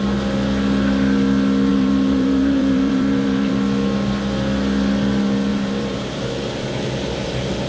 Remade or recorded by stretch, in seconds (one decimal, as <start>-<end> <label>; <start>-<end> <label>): 0.0-1.7 recorded; 1.7-3.5 remade; 3.5-5.5 recorded; 5.5-6.2 remade; 6.2-7.7 recorded